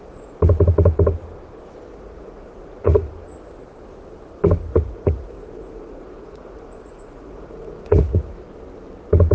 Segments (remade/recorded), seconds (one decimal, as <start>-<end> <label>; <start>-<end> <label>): 0.0-1.9 recorded; 1.9-3.1 remade; 3.1-4.7 recorded; 4.7-8.4 remade; 8.4-9.3 recorded